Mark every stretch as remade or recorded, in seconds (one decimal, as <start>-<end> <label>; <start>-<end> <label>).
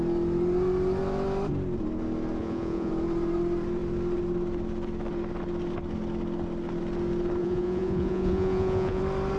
0.0-2.4 recorded; 2.4-2.9 remade; 2.9-7.4 recorded; 7.4-9.0 remade; 9.0-9.4 recorded